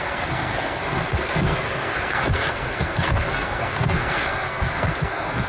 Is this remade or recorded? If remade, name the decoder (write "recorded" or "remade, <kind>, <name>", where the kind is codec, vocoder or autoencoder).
remade, codec, SNAC